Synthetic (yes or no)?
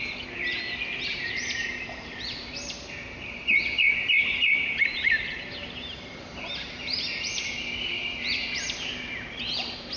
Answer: yes